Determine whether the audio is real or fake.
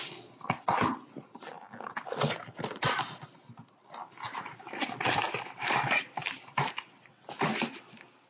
real